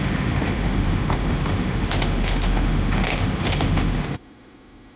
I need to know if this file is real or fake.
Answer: fake